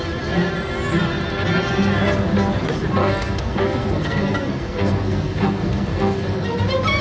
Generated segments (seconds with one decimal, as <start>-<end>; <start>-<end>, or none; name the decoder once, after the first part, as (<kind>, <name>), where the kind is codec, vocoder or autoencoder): 3.0-6.6 (codec, SNAC)